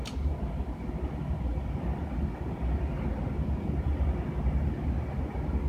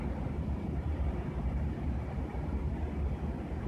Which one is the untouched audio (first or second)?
first